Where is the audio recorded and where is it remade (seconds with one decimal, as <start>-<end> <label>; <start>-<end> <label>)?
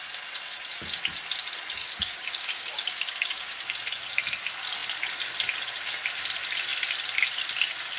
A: 0.0-1.8 recorded; 1.8-3.5 remade; 3.5-8.0 recorded